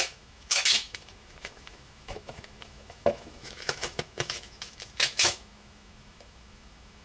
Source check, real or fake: fake